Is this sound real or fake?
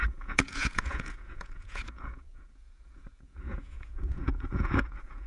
fake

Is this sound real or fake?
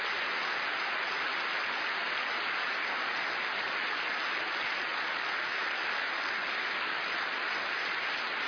real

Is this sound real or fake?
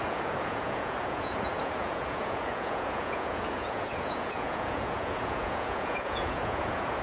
fake